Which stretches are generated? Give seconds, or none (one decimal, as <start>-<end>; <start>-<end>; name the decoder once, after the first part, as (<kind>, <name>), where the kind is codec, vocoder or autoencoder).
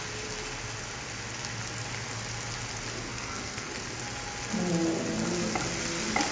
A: 3.1-3.7 (codec, SNAC)